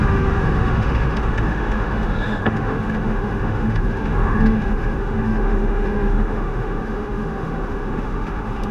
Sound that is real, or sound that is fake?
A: fake